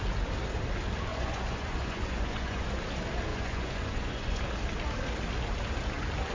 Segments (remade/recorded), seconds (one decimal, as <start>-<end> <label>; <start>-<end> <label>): 0.0-1.1 recorded; 1.1-2.7 remade; 2.7-3.3 recorded; 3.3-4.4 remade; 4.4-6.3 recorded